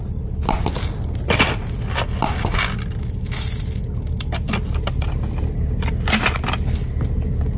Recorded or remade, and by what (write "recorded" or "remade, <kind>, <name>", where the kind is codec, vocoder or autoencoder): recorded